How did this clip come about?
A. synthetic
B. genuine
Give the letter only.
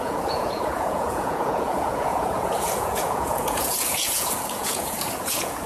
A